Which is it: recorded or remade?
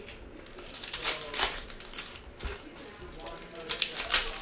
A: recorded